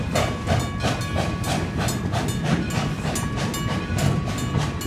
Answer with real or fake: real